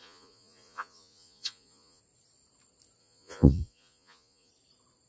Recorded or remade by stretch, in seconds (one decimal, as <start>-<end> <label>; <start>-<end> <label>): 0.0-2.0 remade; 2.0-3.0 recorded; 3.0-4.5 remade; 4.5-5.1 recorded